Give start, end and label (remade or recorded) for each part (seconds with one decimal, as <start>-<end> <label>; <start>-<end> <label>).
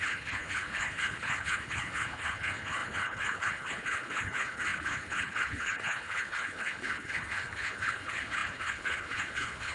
0.0-9.7 remade